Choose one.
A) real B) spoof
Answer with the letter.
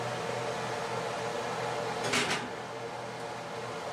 A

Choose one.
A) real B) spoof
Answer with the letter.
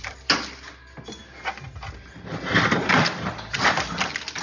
A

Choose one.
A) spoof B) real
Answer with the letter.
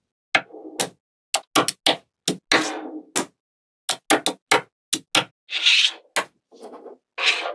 B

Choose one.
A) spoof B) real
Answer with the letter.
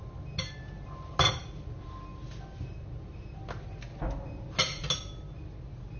B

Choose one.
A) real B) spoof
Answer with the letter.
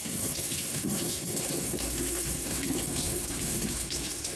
B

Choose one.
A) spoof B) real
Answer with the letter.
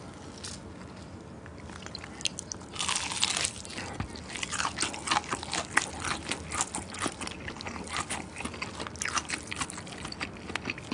B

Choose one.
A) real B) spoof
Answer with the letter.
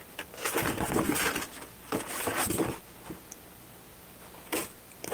A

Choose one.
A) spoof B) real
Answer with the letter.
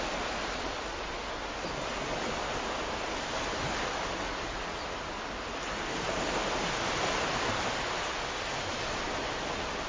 B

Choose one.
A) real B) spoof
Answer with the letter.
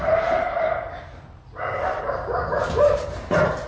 B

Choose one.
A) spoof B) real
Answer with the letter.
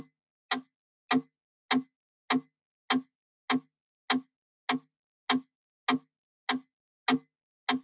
B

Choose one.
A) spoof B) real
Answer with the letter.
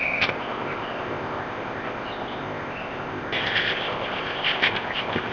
A